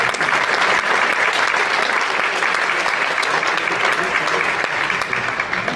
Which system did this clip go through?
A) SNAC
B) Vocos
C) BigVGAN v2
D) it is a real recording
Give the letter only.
D